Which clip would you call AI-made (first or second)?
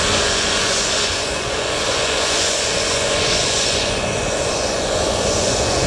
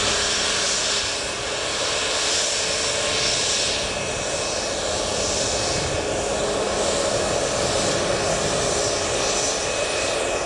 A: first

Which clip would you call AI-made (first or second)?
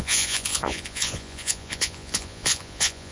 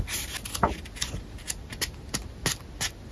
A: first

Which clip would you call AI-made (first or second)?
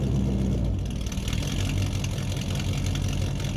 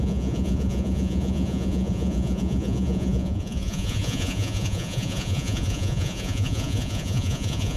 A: second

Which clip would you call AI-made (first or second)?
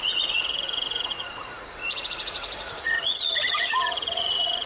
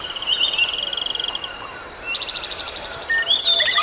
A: first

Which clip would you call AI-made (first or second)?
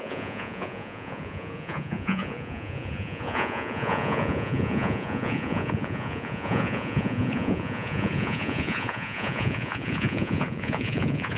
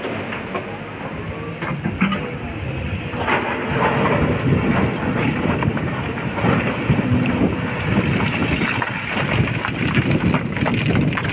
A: first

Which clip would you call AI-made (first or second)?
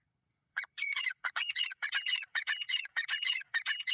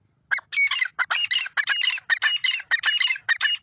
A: first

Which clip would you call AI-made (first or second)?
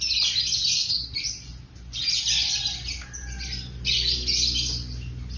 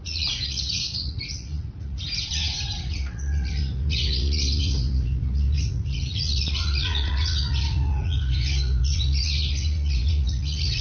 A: second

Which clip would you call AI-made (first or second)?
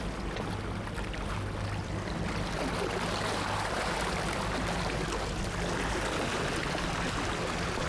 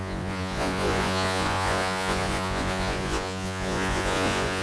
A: second